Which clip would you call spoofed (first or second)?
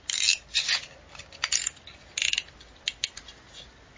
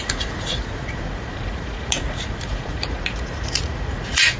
second